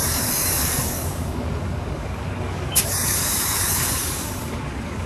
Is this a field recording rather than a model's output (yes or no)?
no